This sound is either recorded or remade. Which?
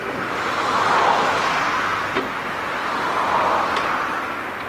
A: recorded